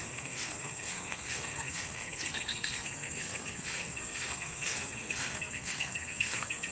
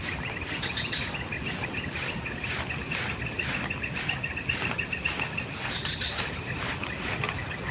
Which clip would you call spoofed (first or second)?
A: first